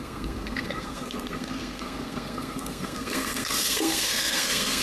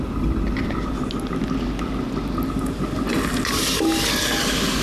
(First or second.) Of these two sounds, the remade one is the first